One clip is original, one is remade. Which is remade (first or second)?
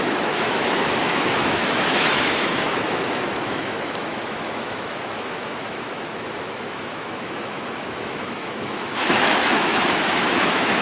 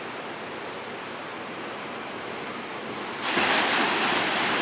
first